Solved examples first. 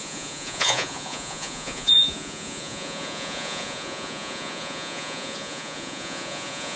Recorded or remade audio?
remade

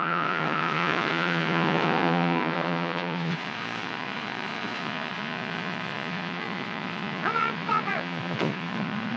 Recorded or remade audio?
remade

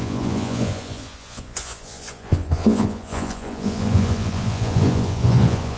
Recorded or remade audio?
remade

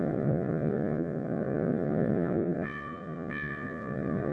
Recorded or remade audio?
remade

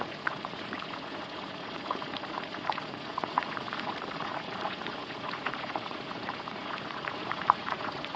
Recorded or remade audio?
remade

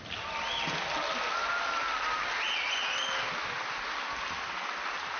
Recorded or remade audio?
recorded